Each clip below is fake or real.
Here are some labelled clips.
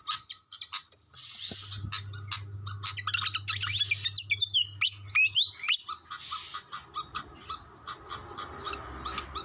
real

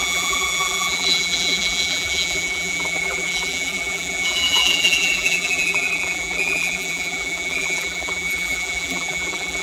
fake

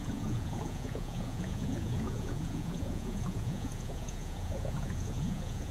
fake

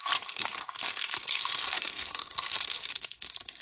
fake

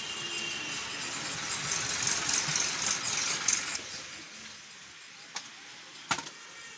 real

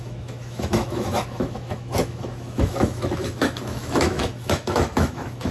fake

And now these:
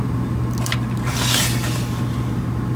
real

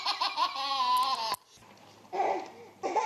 fake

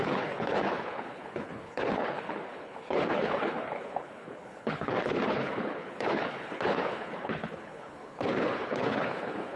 fake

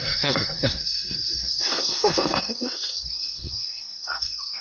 fake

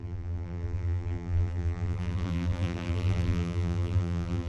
fake